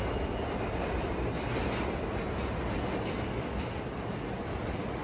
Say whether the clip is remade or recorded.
recorded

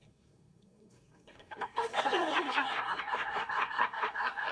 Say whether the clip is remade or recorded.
remade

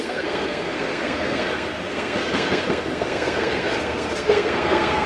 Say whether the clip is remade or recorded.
remade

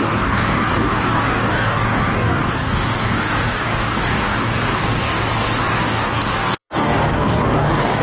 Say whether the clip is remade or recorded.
remade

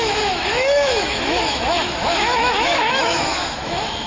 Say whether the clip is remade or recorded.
remade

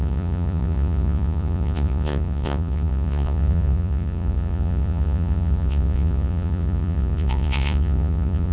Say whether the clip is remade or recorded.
remade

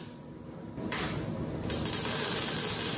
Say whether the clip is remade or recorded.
recorded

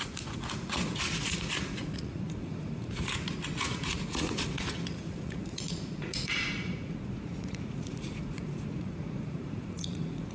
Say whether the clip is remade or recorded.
remade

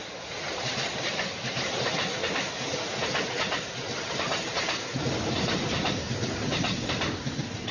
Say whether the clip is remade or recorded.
recorded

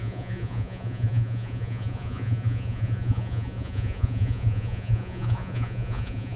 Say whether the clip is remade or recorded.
remade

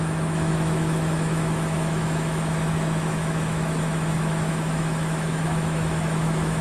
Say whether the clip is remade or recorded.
remade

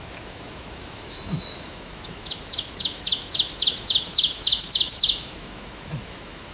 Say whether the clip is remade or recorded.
remade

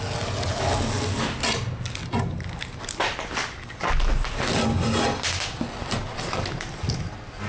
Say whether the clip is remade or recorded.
recorded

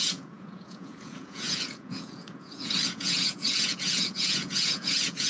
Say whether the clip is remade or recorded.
remade